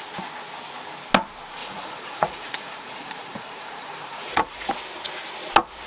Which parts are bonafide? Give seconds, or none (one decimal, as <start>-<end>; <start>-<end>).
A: 0.0-1.6; 4.7-5.9